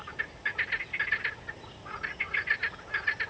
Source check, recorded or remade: recorded